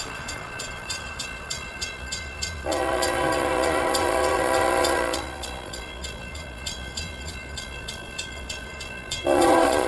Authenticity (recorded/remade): remade